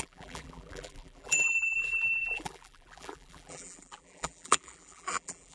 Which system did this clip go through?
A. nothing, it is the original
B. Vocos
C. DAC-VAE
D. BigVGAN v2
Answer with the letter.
D